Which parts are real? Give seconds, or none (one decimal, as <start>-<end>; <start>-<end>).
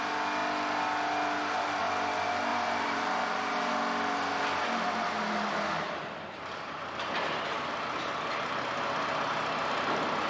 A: 0.0-2.5; 3.7-10.3